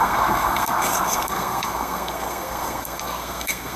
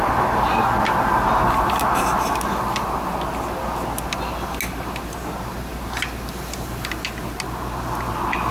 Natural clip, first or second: second